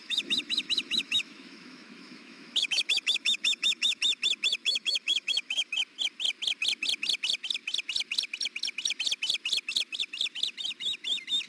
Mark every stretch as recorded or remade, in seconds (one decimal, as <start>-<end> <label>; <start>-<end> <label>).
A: 0.0-4.0 remade; 4.0-4.6 recorded; 4.6-5.7 remade; 5.7-11.5 recorded